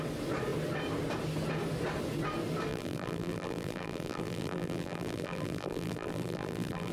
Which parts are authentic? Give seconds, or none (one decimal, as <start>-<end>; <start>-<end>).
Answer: 0.0-2.7